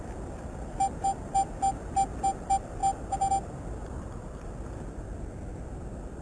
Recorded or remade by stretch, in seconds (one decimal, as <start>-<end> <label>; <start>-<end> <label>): 0.0-6.2 recorded